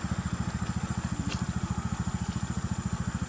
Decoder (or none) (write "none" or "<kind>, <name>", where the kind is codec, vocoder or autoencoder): none